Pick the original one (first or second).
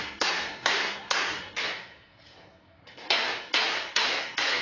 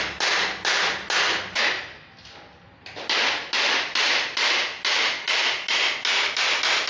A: second